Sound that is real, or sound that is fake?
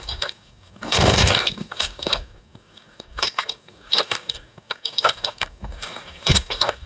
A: fake